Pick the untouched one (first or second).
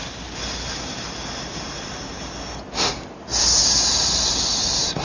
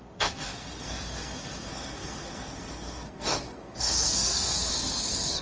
first